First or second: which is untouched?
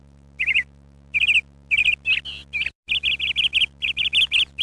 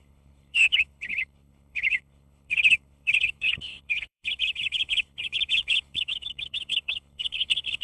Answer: first